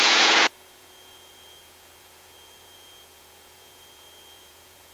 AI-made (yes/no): yes